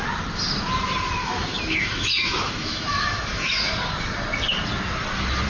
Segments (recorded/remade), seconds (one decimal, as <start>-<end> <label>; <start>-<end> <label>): 0.0-1.2 recorded; 1.2-3.6 remade; 3.6-5.5 recorded

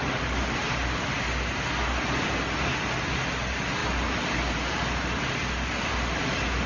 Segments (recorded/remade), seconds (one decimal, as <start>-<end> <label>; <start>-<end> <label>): 0.0-6.7 recorded

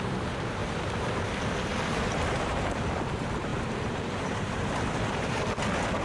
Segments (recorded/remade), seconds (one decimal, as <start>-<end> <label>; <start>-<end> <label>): 0.0-0.6 recorded; 0.6-1.2 remade; 1.2-1.7 recorded; 1.7-2.7 remade; 2.7-3.5 recorded; 3.5-5.4 remade; 5.4-6.0 recorded

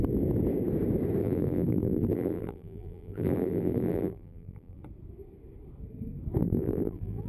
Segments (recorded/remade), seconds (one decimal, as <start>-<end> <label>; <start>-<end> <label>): 0.0-1.2 recorded; 1.2-4.8 remade; 4.8-6.4 recorded; 6.4-7.3 remade